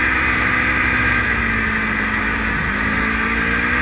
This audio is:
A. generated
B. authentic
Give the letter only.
B